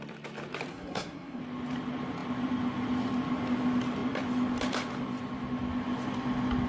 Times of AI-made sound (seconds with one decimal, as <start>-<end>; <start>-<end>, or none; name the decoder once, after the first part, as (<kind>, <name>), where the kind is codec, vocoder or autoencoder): 0.7-1.4 (codec, SNAC)